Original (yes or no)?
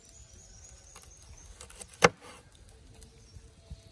yes